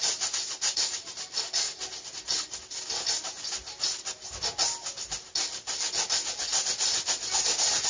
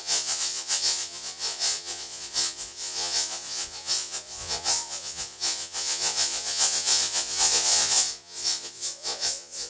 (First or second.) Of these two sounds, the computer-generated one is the second